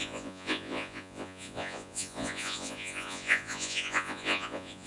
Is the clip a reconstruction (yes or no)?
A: yes